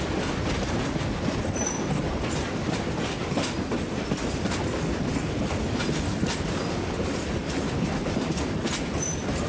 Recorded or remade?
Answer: remade